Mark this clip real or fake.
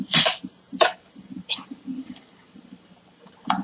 fake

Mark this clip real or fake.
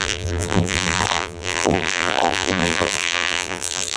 fake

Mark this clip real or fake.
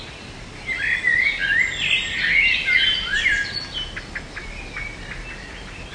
real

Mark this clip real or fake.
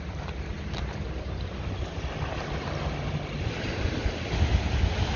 real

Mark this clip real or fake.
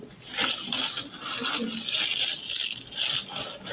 real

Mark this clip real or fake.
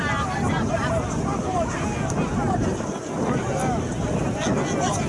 real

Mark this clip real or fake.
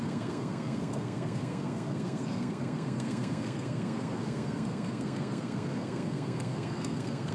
fake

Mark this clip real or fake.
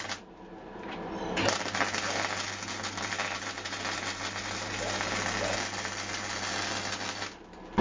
real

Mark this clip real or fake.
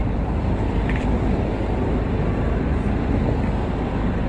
real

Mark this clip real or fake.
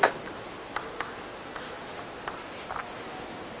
real